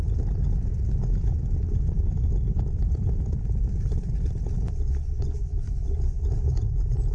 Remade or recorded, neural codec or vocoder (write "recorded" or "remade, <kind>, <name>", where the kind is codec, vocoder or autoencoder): recorded